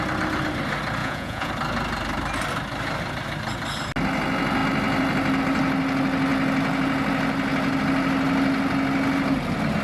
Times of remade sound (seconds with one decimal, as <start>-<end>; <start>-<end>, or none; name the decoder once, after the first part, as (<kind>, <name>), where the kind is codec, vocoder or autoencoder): 1.0-1.5 (vocoder, Vocos)